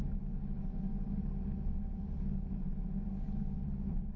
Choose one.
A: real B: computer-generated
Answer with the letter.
A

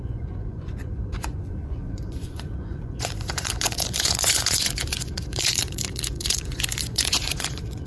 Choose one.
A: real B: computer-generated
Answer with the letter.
B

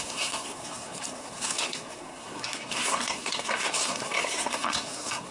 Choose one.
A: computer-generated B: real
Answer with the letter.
A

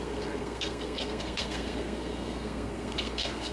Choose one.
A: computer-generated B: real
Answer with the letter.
A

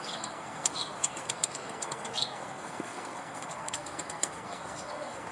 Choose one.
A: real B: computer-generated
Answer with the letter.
B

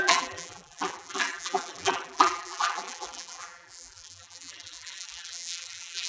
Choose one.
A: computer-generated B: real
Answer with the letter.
A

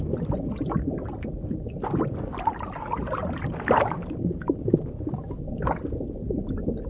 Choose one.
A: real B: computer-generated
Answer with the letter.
A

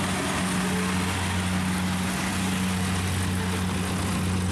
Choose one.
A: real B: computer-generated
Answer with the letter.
A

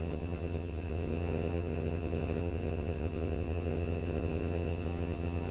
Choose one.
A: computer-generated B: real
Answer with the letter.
A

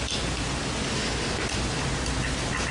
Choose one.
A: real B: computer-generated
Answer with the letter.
A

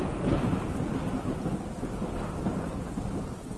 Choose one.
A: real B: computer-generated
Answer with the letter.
A